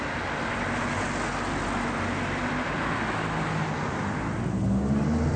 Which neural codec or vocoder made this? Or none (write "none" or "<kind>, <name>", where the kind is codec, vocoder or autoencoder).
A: none